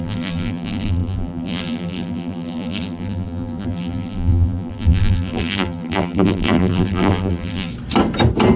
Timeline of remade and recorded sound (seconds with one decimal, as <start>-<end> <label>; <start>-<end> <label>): 0.0-7.7 remade; 7.7-8.6 recorded